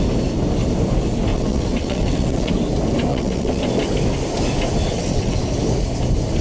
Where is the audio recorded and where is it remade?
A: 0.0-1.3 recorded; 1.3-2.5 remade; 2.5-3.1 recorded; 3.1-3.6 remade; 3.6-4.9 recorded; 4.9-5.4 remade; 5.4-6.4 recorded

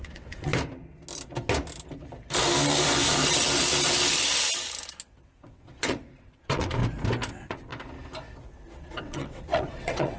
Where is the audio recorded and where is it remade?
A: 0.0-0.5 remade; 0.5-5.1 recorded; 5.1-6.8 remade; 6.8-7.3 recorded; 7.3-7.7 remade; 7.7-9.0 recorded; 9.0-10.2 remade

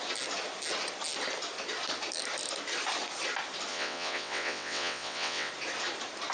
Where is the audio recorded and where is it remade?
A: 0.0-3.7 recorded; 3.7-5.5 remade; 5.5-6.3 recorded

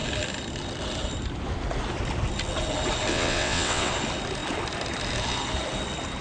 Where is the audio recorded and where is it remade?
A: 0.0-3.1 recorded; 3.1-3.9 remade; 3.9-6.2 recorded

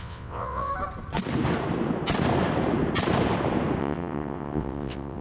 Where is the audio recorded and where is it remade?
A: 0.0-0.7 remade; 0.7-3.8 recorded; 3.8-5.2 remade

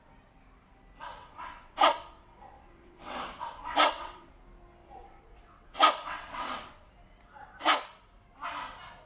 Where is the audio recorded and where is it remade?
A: 0.0-1.2 recorded; 1.2-4.3 remade; 4.3-4.8 recorded; 4.8-6.9 remade; 6.9-9.1 recorded

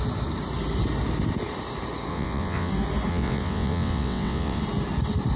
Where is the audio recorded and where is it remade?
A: 0.0-2.1 recorded; 2.1-2.7 remade; 2.7-3.1 recorded; 3.1-4.6 remade; 4.6-5.4 recorded

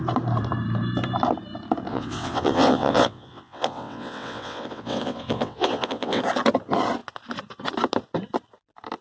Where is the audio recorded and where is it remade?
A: 0.0-1.9 recorded; 1.9-6.2 remade; 6.2-9.0 recorded